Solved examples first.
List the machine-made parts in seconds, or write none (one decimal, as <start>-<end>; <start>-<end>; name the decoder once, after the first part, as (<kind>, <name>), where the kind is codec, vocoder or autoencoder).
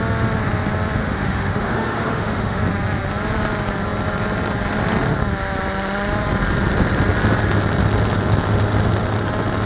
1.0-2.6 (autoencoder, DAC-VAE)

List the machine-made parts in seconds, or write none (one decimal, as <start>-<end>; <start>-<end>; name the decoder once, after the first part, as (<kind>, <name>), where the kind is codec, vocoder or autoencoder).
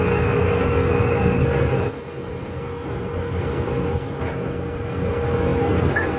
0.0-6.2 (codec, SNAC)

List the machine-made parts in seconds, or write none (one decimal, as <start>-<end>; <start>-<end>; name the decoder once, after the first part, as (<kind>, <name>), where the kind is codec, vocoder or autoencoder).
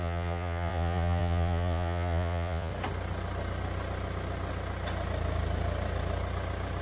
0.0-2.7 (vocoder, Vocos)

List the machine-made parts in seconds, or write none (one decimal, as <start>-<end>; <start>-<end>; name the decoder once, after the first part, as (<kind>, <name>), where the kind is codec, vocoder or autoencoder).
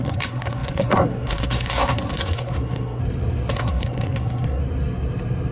0.0-3.0 (codec, SNAC); 3.5-4.6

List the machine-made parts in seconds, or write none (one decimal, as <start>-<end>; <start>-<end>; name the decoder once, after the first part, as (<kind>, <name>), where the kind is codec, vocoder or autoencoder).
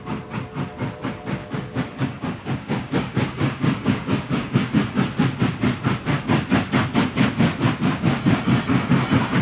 1.4-4.7 (codec, DAC)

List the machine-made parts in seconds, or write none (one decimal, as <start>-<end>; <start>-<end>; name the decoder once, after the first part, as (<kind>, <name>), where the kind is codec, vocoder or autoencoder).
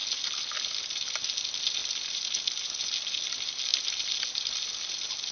none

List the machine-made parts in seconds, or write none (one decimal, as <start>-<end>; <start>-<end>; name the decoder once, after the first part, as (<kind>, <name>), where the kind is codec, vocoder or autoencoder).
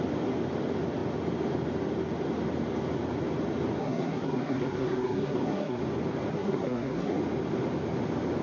3.8-5.8 (codec, SNAC); 6.3-7.2